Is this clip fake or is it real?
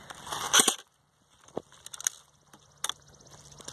real